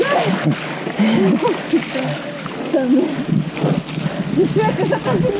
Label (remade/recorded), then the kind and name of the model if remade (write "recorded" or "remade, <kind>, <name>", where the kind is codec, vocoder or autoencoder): recorded